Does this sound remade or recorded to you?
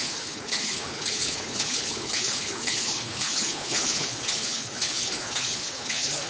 remade